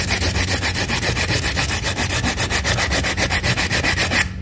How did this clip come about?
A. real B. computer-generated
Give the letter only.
A